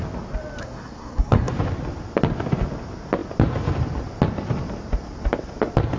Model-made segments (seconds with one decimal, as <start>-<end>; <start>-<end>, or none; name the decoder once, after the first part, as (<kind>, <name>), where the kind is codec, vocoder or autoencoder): 0.6-1.5 (codec, SNAC)